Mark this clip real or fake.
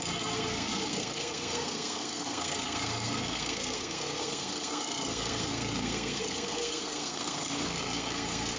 fake